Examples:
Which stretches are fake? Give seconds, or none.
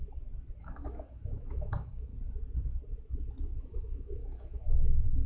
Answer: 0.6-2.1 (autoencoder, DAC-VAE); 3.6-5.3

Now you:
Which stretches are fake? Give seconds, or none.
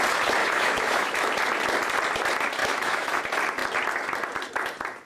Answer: 0.4-1.3 (autoencoder, DAC-VAE); 2.6-3.2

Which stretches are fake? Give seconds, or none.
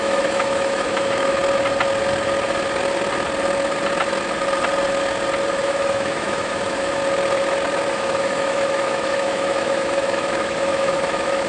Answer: 0.0-1.4 (autoencoder, DAC-VAE); 5.5-7.0; 7.9-11.5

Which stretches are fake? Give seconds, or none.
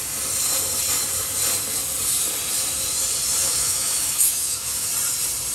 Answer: 3.4-4.9 (autoencoder, DAC-VAE)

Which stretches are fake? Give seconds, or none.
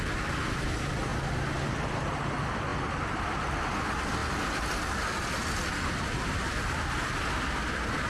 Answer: none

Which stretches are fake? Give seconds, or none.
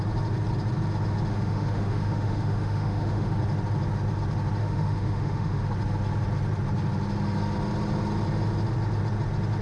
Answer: 1.3-3.4 (autoencoder, DAC-VAE); 4.6-5.6